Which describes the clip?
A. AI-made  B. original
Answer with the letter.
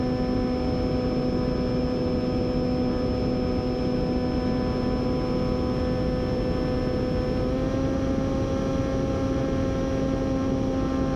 B